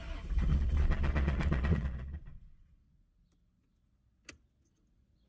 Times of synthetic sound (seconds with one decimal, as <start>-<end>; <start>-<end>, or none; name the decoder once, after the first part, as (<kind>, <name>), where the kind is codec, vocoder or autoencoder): 0.5-2.7 (vocoder, Vocos)